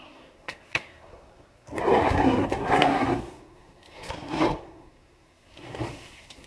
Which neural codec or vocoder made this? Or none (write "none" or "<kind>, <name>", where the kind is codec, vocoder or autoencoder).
codec, SNAC